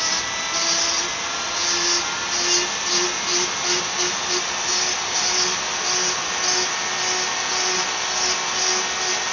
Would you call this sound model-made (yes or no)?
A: no